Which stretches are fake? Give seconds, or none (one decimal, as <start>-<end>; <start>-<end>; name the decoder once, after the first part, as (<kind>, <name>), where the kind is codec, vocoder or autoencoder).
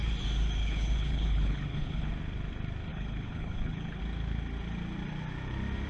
0.6-2.1 (codec, HILCodec); 2.9-4.0